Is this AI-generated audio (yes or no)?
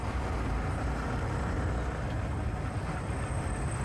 no